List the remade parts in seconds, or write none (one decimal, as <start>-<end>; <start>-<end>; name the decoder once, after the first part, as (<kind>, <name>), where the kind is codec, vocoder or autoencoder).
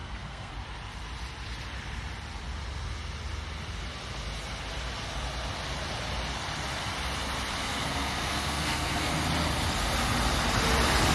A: 0.0-0.5 (codec, SNAC); 7.6-9.1